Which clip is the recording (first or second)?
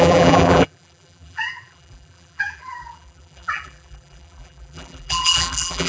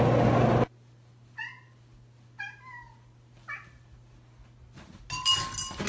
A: second